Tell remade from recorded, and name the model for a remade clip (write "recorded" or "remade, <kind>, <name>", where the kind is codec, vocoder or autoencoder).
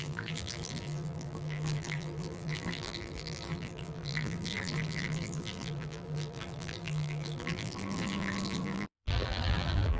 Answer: remade, vocoder, BigVGAN v2